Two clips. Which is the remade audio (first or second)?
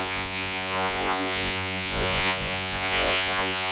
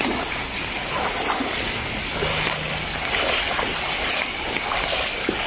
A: first